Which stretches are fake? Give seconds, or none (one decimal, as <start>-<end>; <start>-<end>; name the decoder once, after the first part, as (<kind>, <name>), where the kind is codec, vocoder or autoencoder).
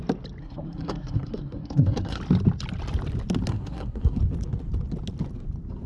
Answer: 0.4-2.2 (codec, SNAC); 3.5-4.2